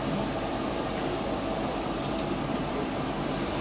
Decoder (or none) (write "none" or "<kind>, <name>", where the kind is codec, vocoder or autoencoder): vocoder, BigVGAN v2